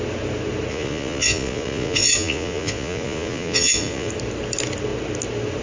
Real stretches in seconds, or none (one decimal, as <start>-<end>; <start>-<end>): 0.0-0.7; 4.1-5.6